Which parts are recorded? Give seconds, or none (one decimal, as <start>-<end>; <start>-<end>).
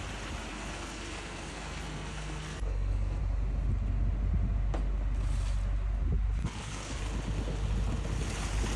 0.0-0.5; 3.2-6.4; 7.0-8.8